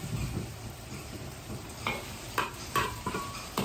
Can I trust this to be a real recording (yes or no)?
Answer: no